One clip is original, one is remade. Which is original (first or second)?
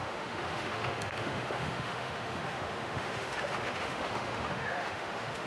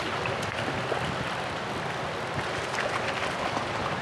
second